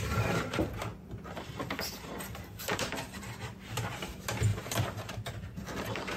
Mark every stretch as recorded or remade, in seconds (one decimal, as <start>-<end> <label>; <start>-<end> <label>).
0.0-2.7 recorded; 2.7-3.8 remade; 3.8-4.5 recorded; 4.5-5.3 remade; 5.3-6.2 recorded